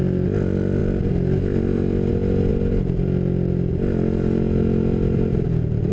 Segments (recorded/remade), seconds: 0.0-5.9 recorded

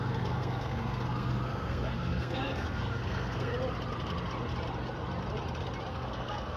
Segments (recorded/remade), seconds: 0.0-3.5 remade; 3.5-5.9 recorded; 5.9-6.6 remade

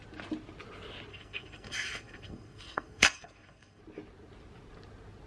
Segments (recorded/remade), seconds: 0.0-1.1 recorded; 1.1-3.8 remade; 3.8-5.3 recorded